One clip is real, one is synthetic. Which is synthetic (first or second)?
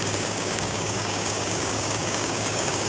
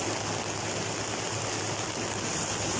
first